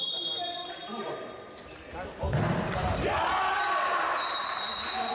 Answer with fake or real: real